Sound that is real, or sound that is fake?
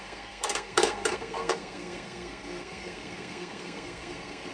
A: fake